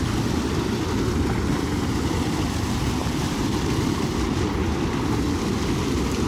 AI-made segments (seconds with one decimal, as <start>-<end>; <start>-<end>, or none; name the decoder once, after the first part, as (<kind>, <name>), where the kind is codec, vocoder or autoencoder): 3.0-3.5 (vocoder, BigVGAN v2)